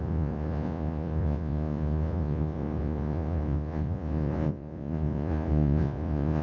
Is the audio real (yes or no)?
no